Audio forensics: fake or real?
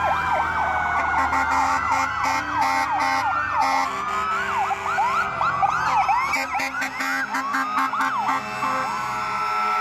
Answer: real